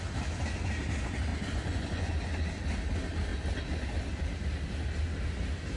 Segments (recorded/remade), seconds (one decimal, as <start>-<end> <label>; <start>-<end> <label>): 0.0-1.3 recorded; 1.3-2.1 remade; 2.1-5.8 recorded